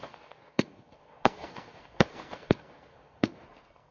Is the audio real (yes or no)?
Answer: no